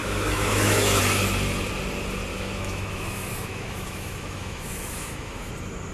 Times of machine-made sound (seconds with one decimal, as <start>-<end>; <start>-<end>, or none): 0.0-1.0; 2.3-5.5